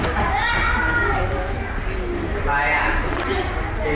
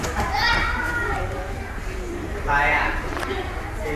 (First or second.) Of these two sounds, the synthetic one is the second